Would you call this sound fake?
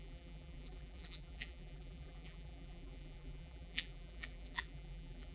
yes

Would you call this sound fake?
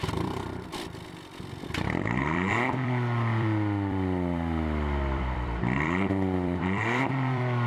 yes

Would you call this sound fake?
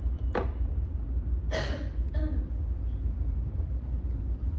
no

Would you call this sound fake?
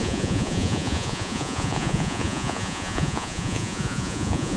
yes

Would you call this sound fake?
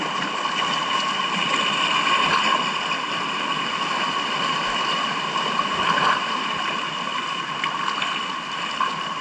no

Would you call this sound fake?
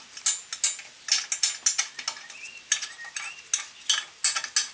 no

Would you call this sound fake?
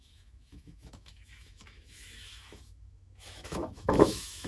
yes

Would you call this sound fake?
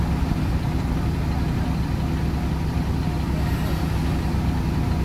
no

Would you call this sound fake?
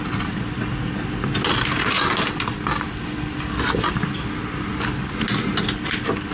no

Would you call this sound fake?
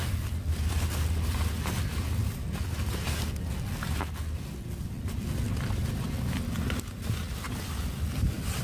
no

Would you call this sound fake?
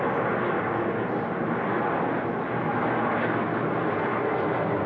no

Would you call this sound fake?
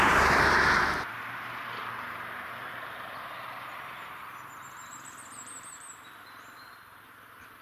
yes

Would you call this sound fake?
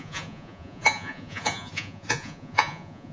yes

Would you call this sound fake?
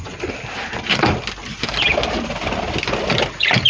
no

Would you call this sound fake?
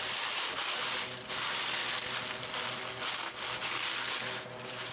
no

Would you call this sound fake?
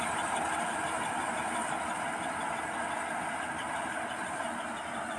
no